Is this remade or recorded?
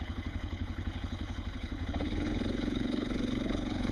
remade